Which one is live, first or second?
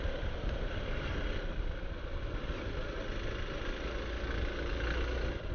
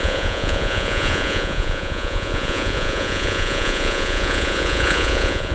first